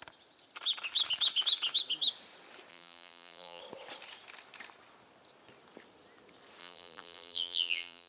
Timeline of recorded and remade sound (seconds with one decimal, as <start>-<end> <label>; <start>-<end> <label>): 0.0-2.7 recorded; 2.7-3.6 remade; 3.6-6.6 recorded; 6.6-8.1 remade